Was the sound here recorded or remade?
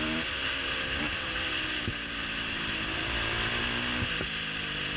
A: recorded